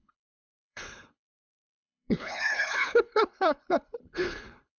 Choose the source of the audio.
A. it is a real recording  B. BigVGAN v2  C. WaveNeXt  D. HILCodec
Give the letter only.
D